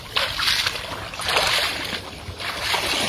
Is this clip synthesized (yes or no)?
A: yes